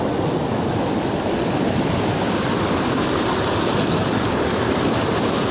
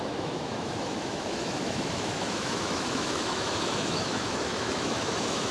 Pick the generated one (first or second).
second